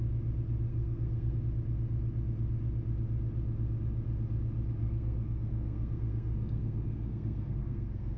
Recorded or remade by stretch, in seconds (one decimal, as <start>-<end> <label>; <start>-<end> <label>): 0.0-0.7 recorded; 0.7-1.4 remade; 1.4-4.8 recorded; 4.8-8.2 remade